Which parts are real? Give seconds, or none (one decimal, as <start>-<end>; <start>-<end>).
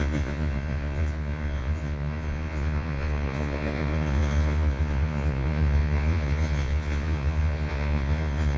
none